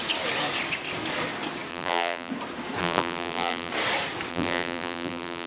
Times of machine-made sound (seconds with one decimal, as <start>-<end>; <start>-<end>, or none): 1.7-2.3; 2.8-3.7; 4.3-5.5